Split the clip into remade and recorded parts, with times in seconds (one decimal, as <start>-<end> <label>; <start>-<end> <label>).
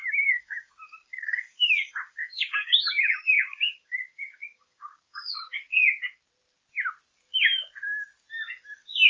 0.0-0.7 remade; 0.7-1.1 recorded; 1.1-5.8 remade; 5.8-9.1 recorded